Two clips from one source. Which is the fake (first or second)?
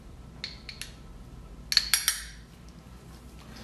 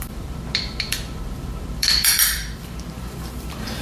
second